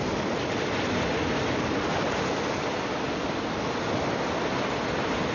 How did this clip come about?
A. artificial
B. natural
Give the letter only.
B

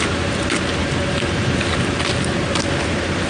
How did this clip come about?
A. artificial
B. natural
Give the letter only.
A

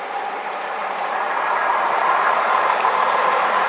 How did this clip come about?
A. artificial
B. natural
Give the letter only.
A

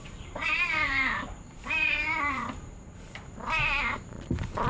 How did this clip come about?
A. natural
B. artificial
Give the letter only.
B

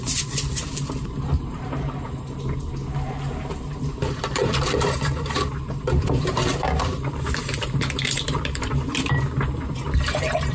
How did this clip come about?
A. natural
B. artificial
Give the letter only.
B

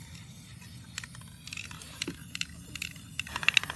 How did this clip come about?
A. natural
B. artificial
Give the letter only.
A